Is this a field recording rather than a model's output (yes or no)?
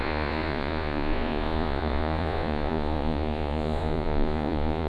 no